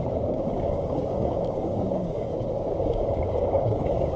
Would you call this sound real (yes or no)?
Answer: no